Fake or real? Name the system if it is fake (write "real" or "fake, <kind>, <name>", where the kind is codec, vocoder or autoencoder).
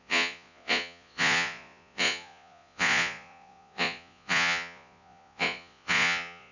fake, vocoder, Vocos